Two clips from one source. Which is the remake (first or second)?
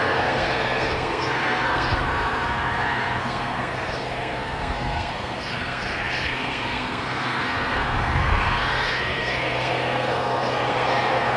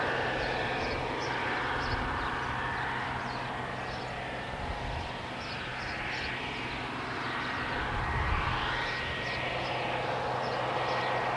first